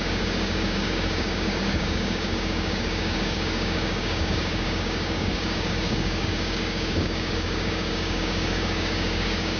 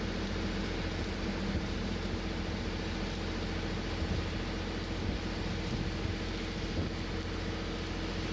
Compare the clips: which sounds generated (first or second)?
first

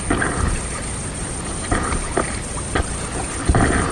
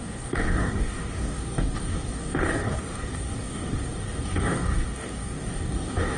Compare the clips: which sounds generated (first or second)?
second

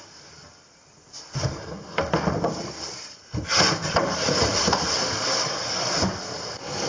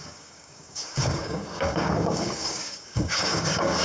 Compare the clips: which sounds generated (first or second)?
second